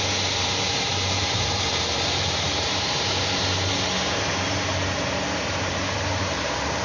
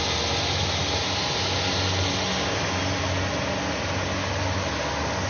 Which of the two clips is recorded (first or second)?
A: second